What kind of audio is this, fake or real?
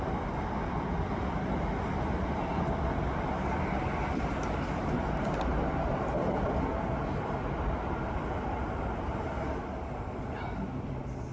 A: real